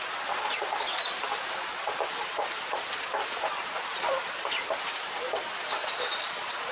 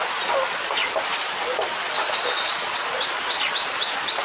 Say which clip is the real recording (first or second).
second